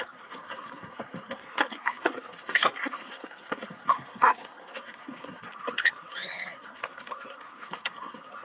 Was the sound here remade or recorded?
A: remade